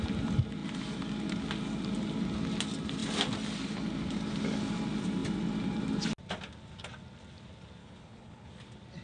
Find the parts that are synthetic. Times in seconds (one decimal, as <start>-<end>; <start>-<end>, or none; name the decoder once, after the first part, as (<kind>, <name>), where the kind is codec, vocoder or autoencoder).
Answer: 7.8-8.5 (codec, HILCodec)